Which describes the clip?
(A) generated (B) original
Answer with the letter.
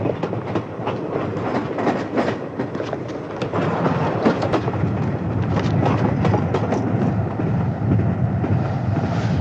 B